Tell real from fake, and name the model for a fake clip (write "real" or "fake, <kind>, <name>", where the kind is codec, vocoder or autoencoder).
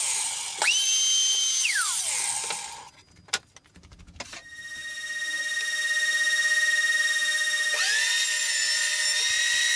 real